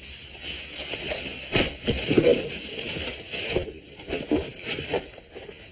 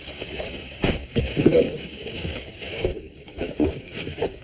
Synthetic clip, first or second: second